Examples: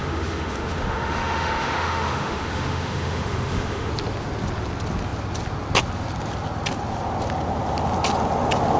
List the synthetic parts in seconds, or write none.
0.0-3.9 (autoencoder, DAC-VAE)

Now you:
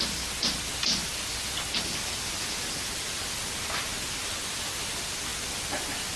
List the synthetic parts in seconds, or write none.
none

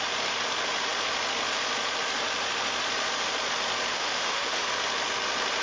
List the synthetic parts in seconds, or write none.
3.9-4.7 (autoencoder, DAC-VAE)